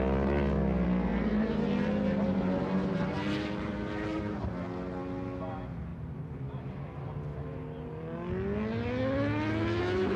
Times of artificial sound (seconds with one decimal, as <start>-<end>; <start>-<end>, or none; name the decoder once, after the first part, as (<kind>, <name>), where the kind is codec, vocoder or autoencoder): 1.1-4.2 (vocoder, BigVGAN v2); 5.9-7.1